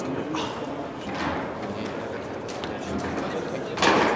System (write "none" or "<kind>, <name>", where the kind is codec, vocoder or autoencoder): none